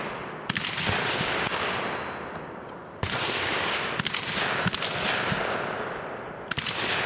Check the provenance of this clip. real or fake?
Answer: real